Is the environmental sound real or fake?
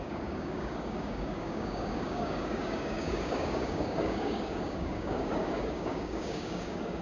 fake